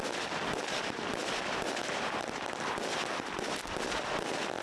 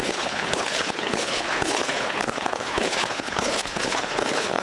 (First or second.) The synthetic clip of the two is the second